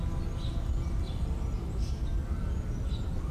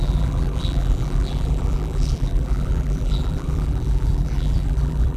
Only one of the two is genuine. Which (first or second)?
first